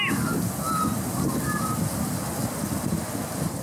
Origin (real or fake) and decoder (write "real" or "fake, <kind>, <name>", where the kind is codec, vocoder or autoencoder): real